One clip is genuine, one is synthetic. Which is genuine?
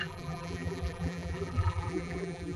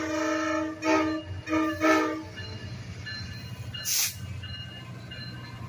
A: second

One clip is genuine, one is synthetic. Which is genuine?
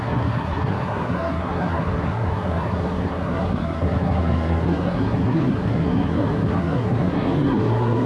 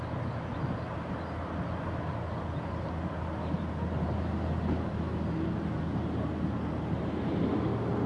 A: second